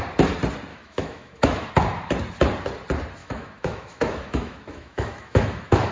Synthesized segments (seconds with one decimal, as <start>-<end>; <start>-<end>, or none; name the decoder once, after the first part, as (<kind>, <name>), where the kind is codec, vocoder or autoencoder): 0.7-1.7 (autoencoder, DAC-VAE); 3.2-5.9